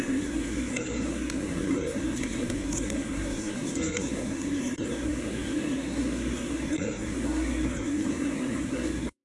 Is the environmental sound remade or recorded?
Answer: remade